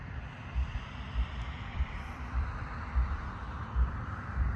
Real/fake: fake